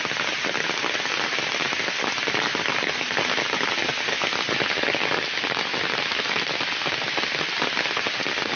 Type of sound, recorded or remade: recorded